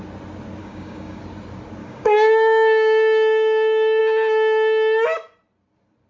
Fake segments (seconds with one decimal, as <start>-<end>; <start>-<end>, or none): 0.6-1.2; 1.8-4.0

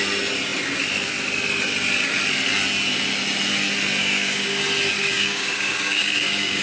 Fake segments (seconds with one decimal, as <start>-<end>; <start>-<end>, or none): 4.0-4.6; 5.0-6.6

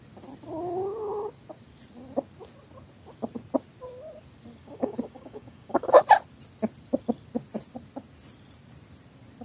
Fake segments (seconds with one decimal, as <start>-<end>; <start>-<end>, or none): 4.6-6.0

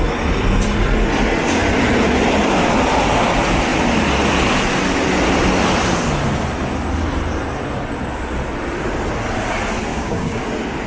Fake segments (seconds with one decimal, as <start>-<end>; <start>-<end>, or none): 9.9-10.4